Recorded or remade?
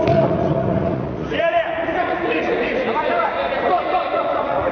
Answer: remade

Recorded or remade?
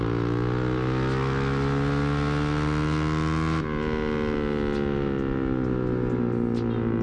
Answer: recorded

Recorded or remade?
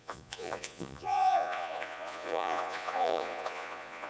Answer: remade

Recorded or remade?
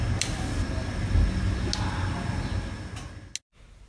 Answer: recorded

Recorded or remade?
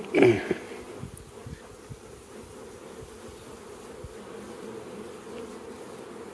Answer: recorded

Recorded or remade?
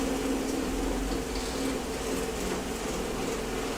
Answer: recorded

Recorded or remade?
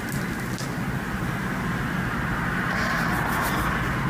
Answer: recorded